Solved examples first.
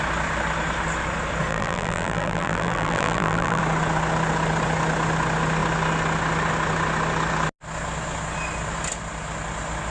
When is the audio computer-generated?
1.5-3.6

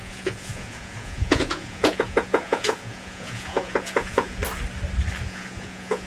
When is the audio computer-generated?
0.0-4.4; 5.2-6.1

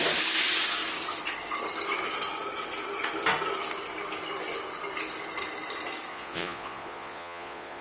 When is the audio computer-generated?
6.1-7.8

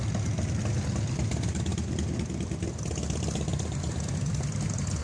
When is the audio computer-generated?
none